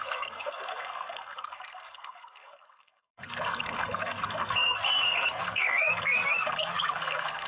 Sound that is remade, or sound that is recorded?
remade